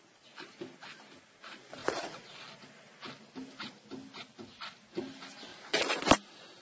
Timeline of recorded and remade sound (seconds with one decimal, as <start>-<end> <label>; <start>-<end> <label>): 0.0-1.8 recorded; 1.8-2.4 remade; 2.4-5.5 recorded; 5.5-6.0 remade; 6.0-6.6 recorded